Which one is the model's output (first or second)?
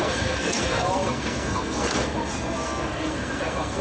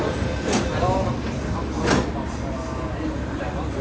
first